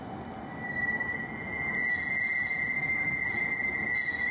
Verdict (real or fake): real